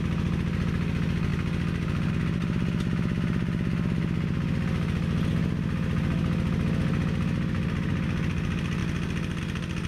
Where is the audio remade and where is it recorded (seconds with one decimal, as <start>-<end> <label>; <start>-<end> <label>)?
0.0-9.9 recorded